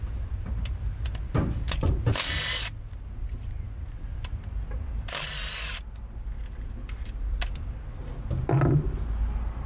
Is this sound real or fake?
real